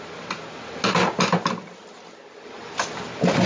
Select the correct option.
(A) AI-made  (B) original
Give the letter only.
B